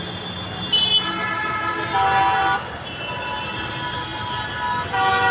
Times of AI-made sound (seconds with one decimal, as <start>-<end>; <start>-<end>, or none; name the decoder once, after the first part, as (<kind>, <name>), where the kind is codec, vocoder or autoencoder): none